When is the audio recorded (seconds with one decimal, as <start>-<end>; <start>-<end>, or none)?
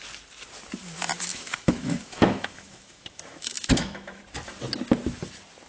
0.0-1.3; 4.2-5.7